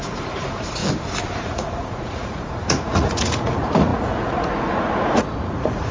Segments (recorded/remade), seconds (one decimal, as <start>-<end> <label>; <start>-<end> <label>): 0.0-0.8 remade; 0.8-1.4 recorded; 1.4-5.9 remade